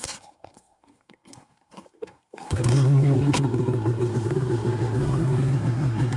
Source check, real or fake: fake